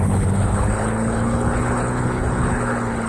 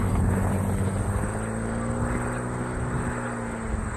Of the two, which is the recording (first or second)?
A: second